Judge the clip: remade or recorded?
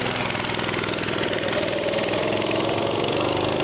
recorded